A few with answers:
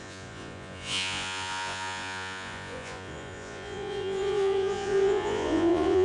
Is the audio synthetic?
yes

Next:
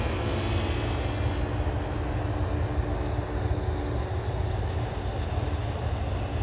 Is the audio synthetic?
no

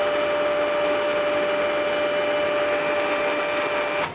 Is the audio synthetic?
no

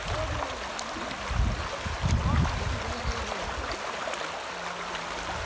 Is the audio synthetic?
no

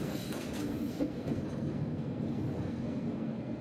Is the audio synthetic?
yes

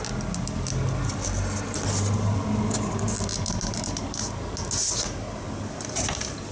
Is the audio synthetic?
no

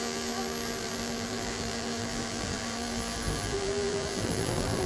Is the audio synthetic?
yes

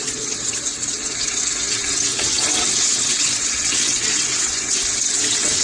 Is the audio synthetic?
yes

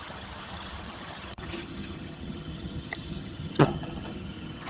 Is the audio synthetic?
yes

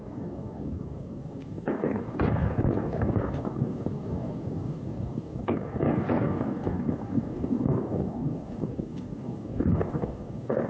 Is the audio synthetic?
yes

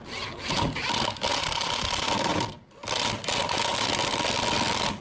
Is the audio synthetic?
no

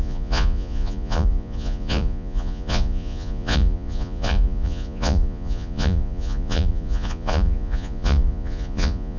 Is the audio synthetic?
yes